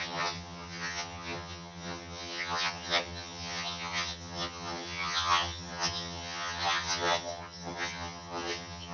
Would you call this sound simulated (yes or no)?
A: yes